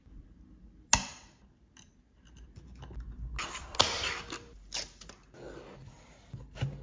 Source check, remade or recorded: recorded